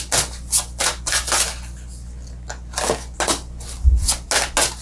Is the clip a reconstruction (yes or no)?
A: no